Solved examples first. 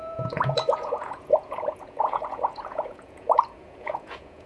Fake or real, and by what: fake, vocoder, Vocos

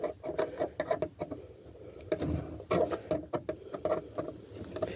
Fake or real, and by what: real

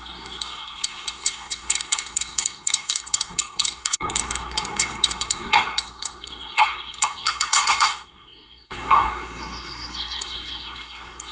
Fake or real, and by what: fake, codec, SNAC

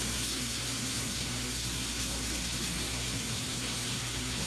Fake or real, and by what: fake, codec, SNAC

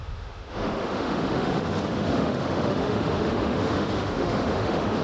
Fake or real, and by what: fake, autoencoder, DAC-VAE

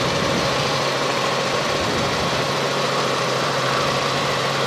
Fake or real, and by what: fake, vocoder, BigVGAN v2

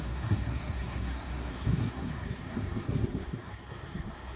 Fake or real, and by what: fake, codec, SNAC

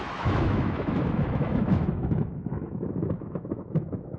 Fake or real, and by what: fake, autoencoder, DAC-VAE